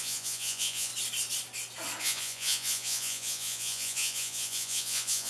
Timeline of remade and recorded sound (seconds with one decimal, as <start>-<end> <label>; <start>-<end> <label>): 0.0-0.9 remade; 0.9-2.0 recorded; 2.0-5.3 remade